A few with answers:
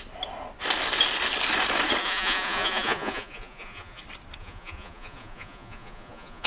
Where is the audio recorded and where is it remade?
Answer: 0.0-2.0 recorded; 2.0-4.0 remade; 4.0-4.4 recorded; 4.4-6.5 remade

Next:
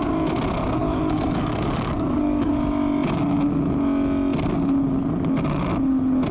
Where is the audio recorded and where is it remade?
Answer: 0.0-0.8 recorded; 0.8-2.5 remade; 2.5-6.3 recorded

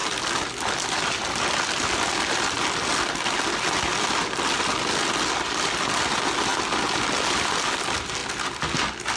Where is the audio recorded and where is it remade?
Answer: 0.0-9.2 recorded